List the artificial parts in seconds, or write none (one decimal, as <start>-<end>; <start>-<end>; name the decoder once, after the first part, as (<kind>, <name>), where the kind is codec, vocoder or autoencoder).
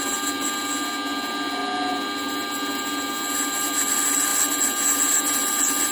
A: none